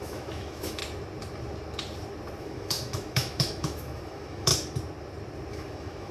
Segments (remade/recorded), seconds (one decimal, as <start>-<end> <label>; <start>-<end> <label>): 0.0-0.8 remade; 0.8-2.4 recorded; 2.4-4.5 remade; 4.5-5.5 recorded; 5.5-6.1 remade